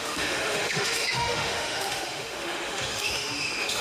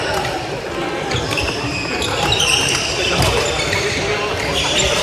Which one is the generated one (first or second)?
first